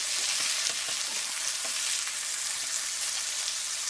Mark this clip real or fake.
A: real